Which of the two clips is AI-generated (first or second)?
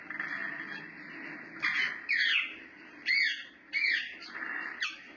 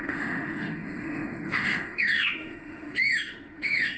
second